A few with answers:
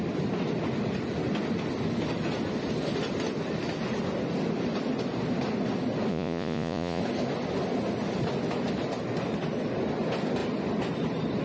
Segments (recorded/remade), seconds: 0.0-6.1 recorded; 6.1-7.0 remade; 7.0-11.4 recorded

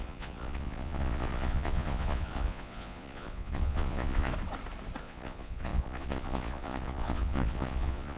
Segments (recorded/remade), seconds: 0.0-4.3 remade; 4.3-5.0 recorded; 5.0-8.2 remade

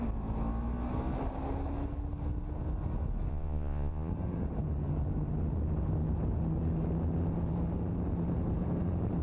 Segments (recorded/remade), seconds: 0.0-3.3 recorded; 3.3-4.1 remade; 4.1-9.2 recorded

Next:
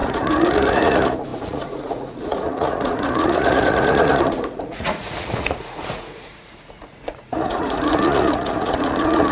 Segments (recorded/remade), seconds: 0.0-9.3 remade

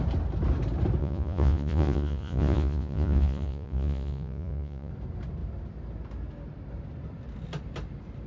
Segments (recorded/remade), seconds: 0.0-1.0 recorded; 1.0-4.9 remade; 4.9-8.3 recorded

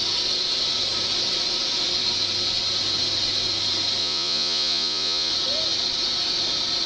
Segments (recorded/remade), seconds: 0.0-4.0 recorded; 4.0-5.3 remade; 5.3-6.9 recorded